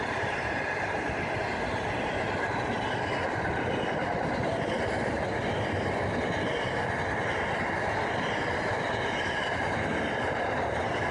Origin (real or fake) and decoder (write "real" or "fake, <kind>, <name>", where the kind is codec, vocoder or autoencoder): real